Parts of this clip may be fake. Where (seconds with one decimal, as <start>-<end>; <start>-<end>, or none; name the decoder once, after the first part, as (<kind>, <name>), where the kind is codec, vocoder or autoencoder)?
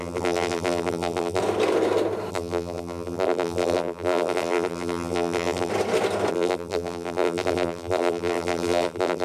0.0-1.4 (vocoder, BigVGAN v2); 2.3-5.7; 6.3-9.2